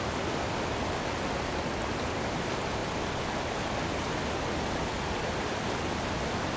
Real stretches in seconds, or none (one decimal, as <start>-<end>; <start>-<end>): 0.0-6.6